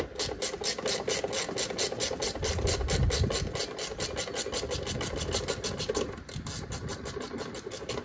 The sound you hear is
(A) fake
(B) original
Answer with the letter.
B